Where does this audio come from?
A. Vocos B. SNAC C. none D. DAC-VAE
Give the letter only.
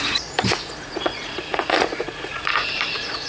A